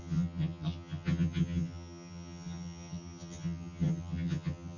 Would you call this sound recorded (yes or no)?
no